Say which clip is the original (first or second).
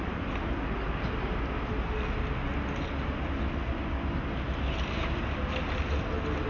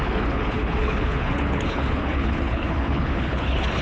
first